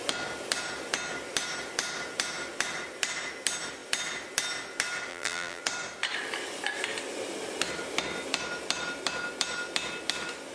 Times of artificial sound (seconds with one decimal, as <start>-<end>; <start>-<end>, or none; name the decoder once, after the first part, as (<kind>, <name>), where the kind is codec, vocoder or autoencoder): 5.1-5.6 (vocoder, BigVGAN v2)